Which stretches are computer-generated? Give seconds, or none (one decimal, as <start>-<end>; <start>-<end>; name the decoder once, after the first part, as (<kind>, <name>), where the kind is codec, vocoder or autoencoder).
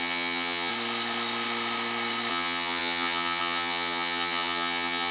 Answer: 0.0-0.7 (vocoder, HiFi-GAN); 2.3-5.1